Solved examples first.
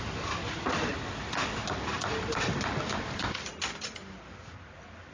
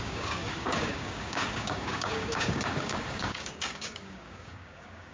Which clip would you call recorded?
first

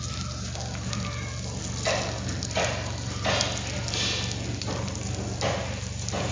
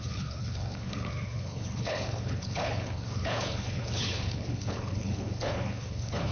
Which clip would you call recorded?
first